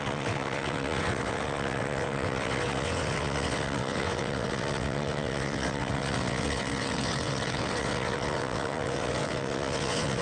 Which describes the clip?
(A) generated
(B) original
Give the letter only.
A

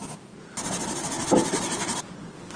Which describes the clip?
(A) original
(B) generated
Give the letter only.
A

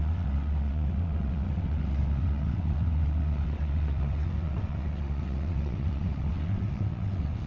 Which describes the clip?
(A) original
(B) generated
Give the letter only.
B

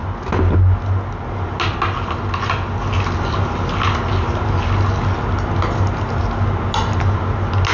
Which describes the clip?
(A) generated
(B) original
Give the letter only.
B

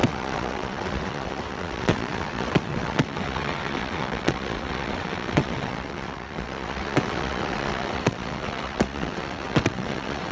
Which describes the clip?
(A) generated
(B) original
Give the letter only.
A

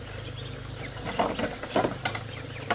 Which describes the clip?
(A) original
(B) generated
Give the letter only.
A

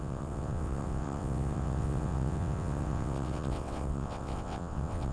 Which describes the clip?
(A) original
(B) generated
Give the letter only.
B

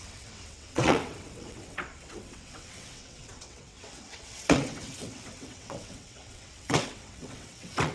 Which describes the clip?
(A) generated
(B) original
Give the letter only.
A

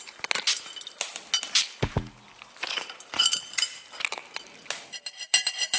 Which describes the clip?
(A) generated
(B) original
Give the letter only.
B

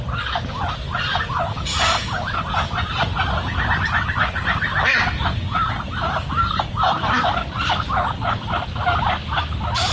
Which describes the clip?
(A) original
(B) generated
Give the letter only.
A